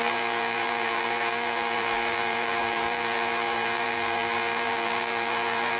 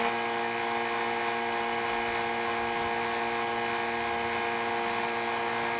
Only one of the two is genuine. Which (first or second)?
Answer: second